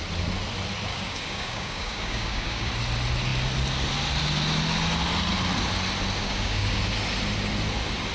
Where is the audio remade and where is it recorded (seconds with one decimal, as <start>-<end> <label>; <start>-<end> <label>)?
0.0-0.9 recorded; 0.9-2.7 remade; 2.7-6.2 recorded; 6.2-6.8 remade; 6.8-8.1 recorded